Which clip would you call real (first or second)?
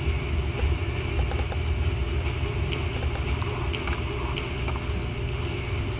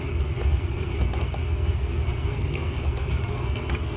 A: first